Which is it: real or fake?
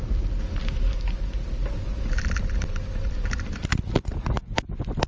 real